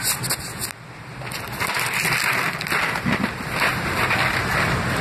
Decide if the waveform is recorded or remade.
recorded